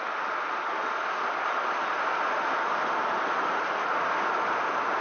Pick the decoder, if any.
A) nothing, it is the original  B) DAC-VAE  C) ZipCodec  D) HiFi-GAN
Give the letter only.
A